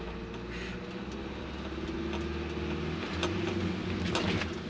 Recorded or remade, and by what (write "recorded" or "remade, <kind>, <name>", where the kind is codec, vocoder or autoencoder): recorded